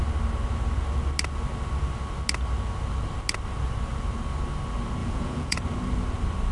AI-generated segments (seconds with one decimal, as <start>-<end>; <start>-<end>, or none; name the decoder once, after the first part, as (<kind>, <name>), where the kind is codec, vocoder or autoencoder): 5.0-5.6 (vocoder, Vocos)